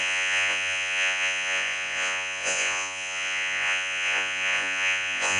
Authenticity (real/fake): fake